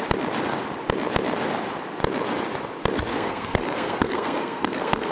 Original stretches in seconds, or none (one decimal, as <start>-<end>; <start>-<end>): 0.0-3.1